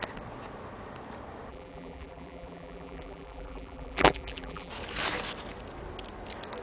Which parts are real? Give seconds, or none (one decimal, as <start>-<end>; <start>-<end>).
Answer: 0.0-1.5; 4.7-6.6